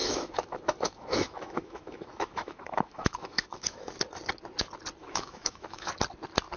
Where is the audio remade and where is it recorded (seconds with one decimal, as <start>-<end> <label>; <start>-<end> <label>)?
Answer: 0.0-4.0 remade; 4.0-5.0 recorded; 5.0-5.9 remade; 5.9-6.6 recorded